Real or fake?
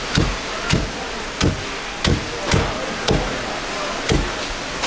real